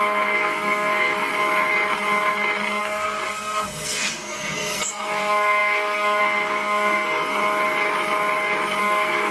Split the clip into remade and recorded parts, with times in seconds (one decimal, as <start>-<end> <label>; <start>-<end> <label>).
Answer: 0.0-1.3 remade; 1.3-2.8 recorded; 2.8-7.4 remade; 7.4-8.8 recorded; 8.8-9.3 remade